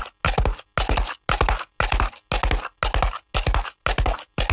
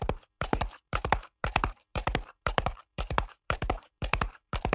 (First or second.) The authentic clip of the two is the first